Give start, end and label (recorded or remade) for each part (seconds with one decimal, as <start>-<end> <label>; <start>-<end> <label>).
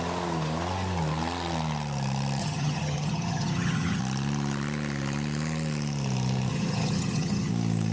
0.0-2.4 recorded; 2.4-4.0 remade; 4.0-6.5 recorded; 6.5-7.5 remade; 7.5-7.9 recorded